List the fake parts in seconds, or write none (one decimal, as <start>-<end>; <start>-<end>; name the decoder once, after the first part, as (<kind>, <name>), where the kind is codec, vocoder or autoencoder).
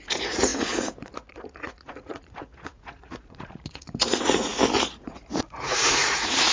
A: 0.0-4.5 (vocoder, Vocos); 5.0-6.5